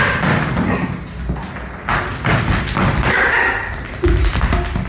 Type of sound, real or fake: real